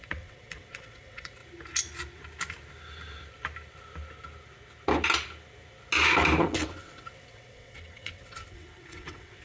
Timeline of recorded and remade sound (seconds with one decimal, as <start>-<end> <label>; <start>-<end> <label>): 0.0-1.4 remade; 1.4-6.4 recorded; 6.4-9.4 remade